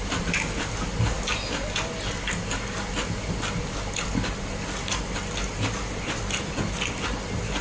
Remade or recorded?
recorded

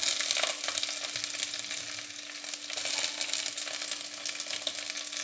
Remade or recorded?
recorded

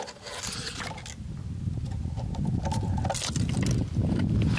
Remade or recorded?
recorded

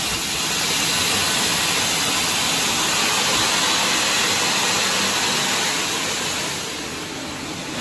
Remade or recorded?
recorded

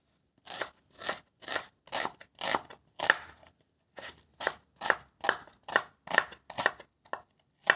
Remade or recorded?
recorded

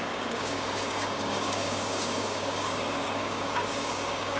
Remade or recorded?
remade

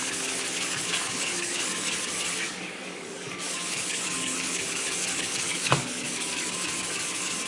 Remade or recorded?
remade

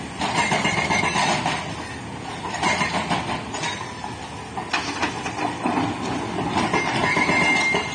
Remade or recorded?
recorded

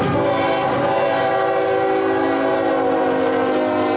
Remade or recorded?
recorded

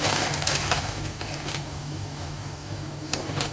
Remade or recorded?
remade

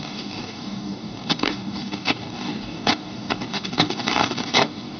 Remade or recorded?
remade